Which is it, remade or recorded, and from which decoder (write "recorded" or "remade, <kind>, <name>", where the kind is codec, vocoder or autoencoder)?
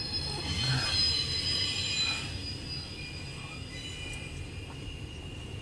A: recorded